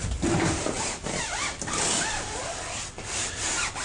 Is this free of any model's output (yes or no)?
yes